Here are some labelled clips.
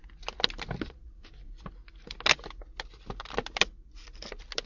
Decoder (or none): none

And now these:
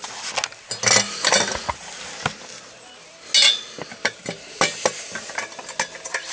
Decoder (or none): none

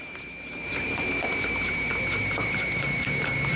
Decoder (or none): none